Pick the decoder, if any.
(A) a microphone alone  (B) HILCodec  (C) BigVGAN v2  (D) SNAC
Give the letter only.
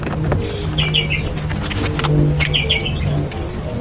A